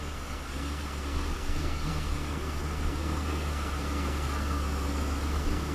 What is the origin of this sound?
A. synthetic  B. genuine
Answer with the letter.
A